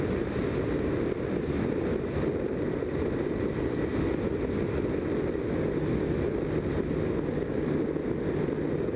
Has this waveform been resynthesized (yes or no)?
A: no